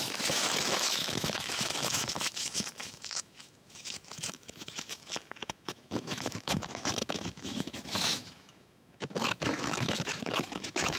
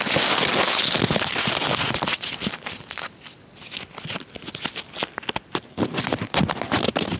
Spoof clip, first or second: first